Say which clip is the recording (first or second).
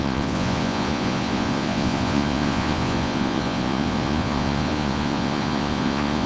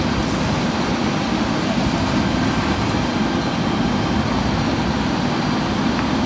second